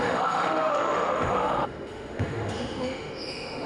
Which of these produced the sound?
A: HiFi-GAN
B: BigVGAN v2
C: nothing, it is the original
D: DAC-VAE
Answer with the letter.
D